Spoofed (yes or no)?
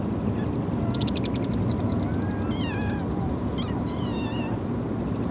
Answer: no